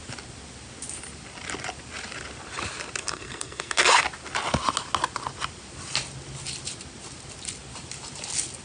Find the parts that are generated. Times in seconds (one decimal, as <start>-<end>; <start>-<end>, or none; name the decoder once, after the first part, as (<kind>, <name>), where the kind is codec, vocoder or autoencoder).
3.0-4.0 (codec, SNAC)